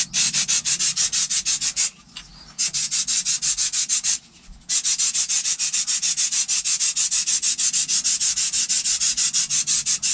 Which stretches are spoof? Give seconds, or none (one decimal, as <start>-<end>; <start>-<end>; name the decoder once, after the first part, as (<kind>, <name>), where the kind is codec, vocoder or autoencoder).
none